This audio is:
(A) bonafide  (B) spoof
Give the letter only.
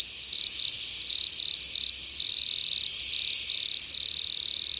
A